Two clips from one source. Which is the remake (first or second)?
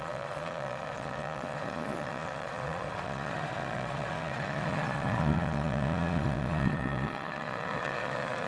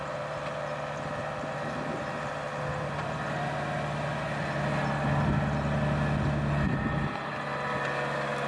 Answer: first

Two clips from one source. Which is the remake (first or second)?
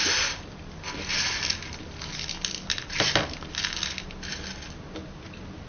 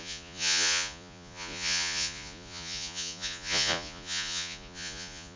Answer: second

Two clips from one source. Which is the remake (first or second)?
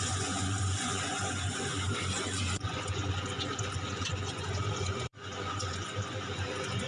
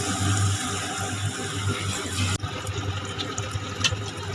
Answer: first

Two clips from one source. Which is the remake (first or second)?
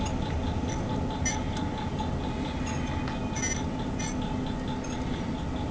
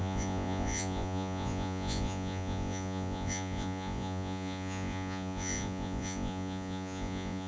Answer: second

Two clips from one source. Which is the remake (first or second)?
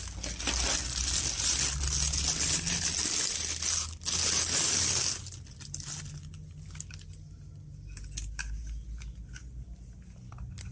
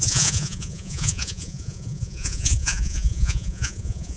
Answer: second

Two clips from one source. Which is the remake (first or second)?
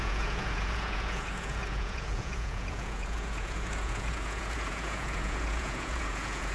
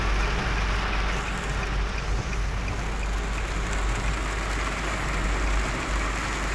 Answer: first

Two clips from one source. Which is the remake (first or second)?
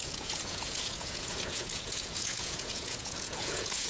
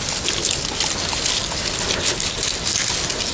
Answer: first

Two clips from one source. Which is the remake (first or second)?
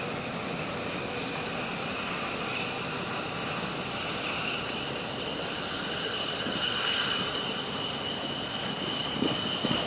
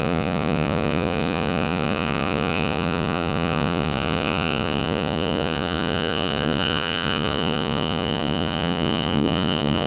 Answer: second